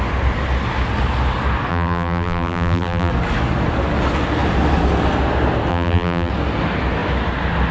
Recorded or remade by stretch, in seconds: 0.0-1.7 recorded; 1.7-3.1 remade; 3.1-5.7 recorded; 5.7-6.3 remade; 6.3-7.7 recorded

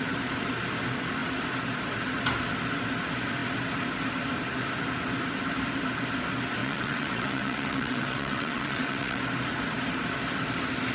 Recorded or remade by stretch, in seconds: 0.0-6.6 recorded; 6.6-9.2 remade; 9.2-10.9 recorded

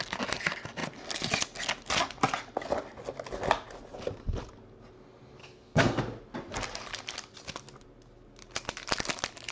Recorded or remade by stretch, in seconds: 0.0-5.4 recorded; 5.4-6.0 remade; 6.0-9.5 recorded